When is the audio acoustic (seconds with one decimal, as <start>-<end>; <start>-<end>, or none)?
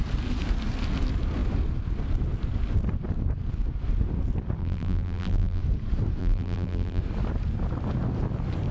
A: 0.0-4.6; 5.6-6.2; 7.0-8.7